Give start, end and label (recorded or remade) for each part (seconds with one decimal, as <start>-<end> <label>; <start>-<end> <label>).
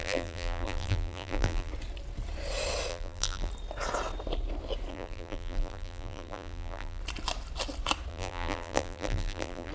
0.0-1.7 remade; 1.7-2.9 recorded; 2.9-3.5 remade; 3.5-4.9 recorded; 4.9-7.0 remade; 7.0-8.1 recorded; 8.1-9.7 remade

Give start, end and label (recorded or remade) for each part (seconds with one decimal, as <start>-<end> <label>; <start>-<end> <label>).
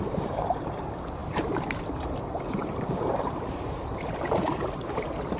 0.0-5.4 remade